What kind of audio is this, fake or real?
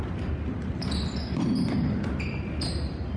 real